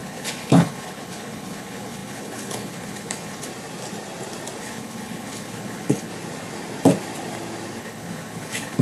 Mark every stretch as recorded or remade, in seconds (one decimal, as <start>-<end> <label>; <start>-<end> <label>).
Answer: 0.0-3.5 remade; 3.5-4.6 recorded; 4.6-6.1 remade; 6.1-7.8 recorded; 7.8-8.8 remade

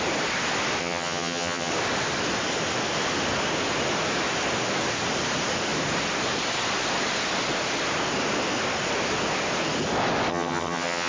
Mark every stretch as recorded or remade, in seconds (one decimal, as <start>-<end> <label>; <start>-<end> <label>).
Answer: 0.0-0.8 recorded; 0.8-1.7 remade; 1.7-10.3 recorded; 10.3-11.1 remade

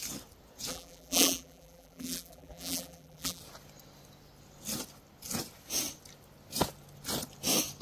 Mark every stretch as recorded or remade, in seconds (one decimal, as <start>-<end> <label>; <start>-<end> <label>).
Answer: 0.0-0.7 recorded; 0.7-3.4 remade; 3.4-7.8 recorded

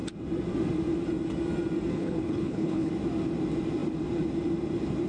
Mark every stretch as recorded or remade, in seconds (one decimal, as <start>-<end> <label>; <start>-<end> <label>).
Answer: 0.0-1.9 recorded; 1.9-2.9 remade; 2.9-5.1 recorded

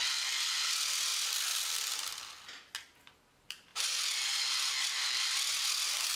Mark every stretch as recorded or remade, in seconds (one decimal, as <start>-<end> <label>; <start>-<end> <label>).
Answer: 0.0-6.2 recorded

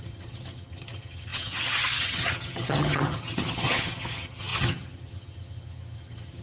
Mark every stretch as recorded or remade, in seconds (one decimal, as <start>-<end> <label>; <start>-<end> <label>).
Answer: 0.0-6.4 remade

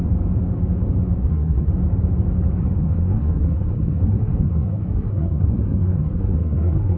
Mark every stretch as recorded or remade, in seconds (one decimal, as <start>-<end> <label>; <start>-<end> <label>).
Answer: 0.0-1.2 recorded; 1.2-1.7 remade; 1.7-2.6 recorded; 2.6-7.0 remade

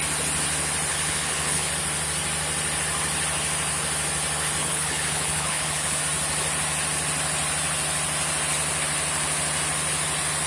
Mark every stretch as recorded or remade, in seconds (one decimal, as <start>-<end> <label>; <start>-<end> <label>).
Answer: 0.0-0.9 recorded; 0.9-1.7 remade; 1.7-4.6 recorded; 4.6-6.0 remade; 6.0-10.5 recorded